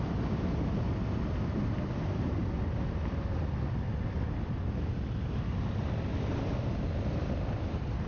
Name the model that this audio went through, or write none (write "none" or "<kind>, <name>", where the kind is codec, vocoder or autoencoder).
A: none